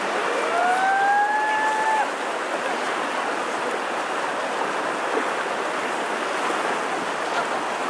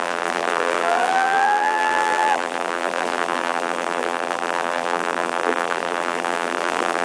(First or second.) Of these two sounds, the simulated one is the second